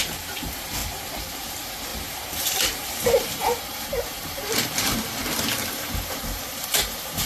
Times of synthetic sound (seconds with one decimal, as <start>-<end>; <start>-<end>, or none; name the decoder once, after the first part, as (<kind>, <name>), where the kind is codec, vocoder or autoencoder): 0.0-7.3 (vocoder, BigVGAN v2)